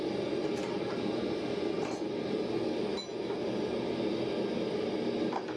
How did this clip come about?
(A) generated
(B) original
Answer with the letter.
B